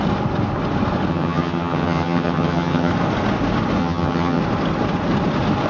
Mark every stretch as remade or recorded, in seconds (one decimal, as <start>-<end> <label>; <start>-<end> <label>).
0.0-1.1 recorded; 1.1-2.9 remade; 2.9-3.8 recorded; 3.8-4.4 remade; 4.4-5.7 recorded